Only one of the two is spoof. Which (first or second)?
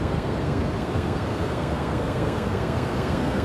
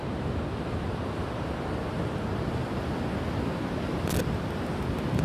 first